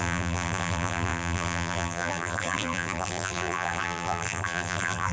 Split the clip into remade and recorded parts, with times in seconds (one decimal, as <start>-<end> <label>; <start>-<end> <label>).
0.0-5.1 remade